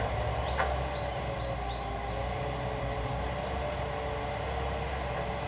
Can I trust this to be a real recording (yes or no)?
yes